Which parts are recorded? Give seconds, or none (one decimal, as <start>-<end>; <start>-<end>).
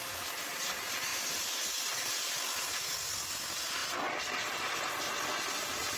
0.0-6.0